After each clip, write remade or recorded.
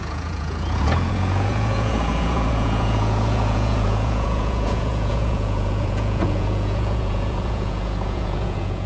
remade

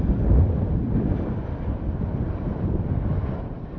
recorded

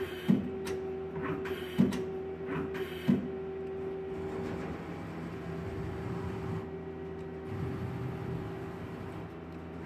recorded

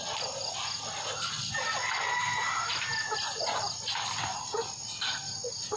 recorded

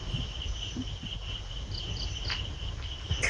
recorded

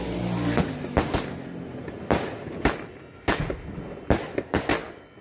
recorded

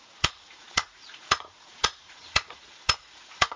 remade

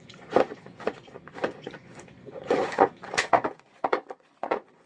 remade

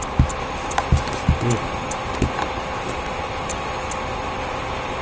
recorded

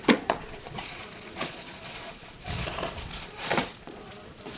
remade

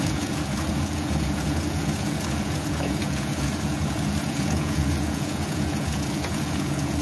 remade